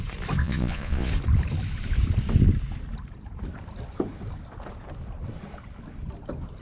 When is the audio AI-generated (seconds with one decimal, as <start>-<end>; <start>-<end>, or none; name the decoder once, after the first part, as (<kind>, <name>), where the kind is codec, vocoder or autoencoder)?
0.4-1.1 (vocoder, Vocos)